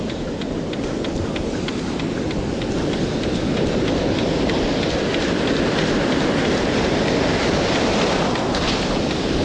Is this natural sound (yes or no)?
yes